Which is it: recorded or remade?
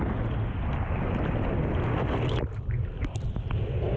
recorded